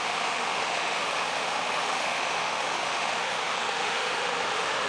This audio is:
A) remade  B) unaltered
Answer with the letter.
A